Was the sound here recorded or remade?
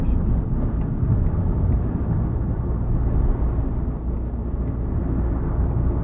recorded